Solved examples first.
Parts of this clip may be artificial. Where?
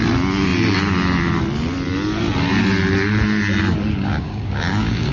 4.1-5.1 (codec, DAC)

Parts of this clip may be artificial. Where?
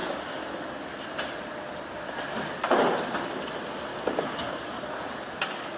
3.9-4.6 (codec, DAC)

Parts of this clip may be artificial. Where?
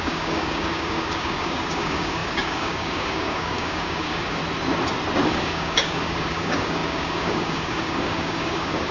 0.0-4.4 (codec, DAC); 5.3-8.9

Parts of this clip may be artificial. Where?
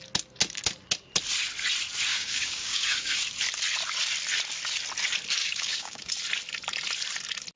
2.1-3.2 (codec, DAC); 5.4-6.1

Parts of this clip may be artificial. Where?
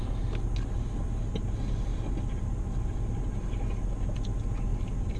none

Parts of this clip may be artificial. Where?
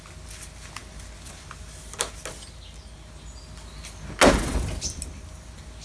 none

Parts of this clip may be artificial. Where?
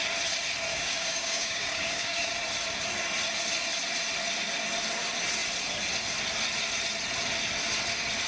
0.7-2.3 (codec, DAC)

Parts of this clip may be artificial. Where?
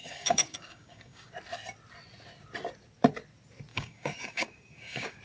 0.0-1.3 (codec, DAC); 3.7-5.2